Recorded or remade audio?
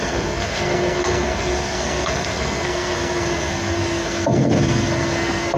remade